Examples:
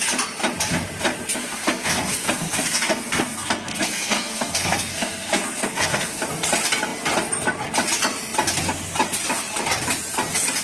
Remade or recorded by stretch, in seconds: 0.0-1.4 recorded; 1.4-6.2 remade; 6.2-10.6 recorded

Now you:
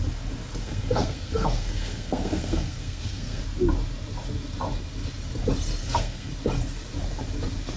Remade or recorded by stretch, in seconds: 0.0-0.6 recorded; 0.6-3.4 remade; 3.4-5.8 recorded; 5.8-6.3 remade; 6.3-7.8 recorded

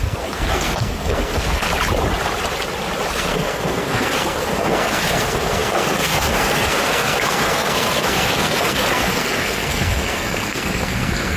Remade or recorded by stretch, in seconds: 0.0-1.7 remade; 1.7-3.1 recorded; 3.1-11.4 remade

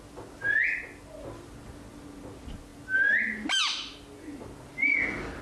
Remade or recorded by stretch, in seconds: 0.0-5.4 recorded

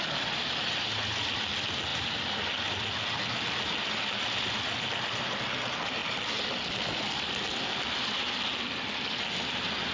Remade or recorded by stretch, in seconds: 0.0-9.9 recorded

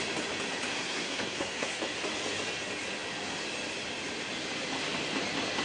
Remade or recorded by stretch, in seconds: 0.0-0.7 recorded; 0.7-1.8 remade; 1.8-5.6 recorded